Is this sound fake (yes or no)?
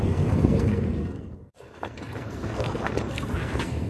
yes